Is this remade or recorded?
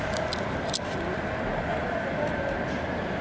recorded